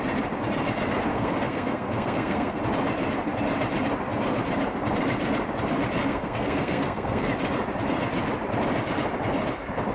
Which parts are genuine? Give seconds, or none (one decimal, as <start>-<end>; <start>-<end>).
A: 0.0-1.1; 2.6-6.0; 7.3-9.9

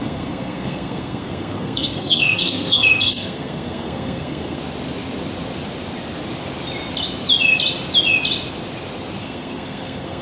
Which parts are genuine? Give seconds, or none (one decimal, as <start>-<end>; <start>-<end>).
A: 4.6-9.2

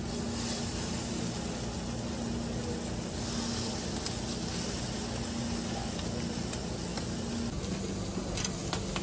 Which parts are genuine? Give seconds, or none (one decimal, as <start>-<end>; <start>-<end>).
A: 0.0-9.0

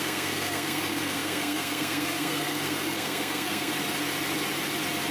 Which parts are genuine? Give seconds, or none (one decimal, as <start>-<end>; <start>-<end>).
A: 3.7-5.1

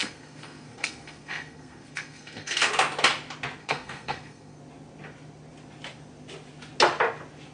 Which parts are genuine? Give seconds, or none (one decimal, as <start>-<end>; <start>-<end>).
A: 2.7-3.6; 4.6-7.5